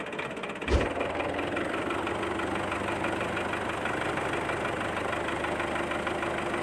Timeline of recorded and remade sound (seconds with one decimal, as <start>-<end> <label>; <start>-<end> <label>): 0.0-6.6 recorded